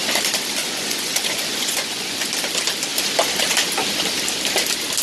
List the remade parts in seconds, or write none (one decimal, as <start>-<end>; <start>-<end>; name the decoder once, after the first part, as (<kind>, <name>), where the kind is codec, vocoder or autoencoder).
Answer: 0.6-2.3 (vocoder, Vocos)